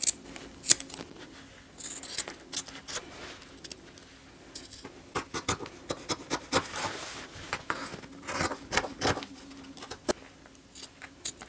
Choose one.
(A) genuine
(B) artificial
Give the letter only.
A